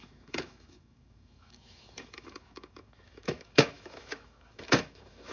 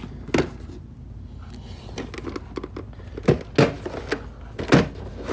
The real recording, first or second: second